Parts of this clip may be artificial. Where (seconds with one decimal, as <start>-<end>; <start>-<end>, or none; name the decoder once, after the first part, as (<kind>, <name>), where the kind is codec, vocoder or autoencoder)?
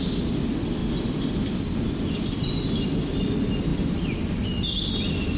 3.7-4.2 (vocoder, BigVGAN v2)